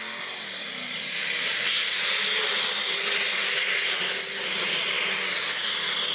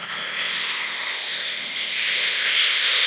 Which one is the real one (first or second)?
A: first